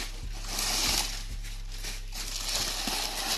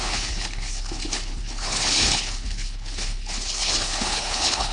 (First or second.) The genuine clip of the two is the first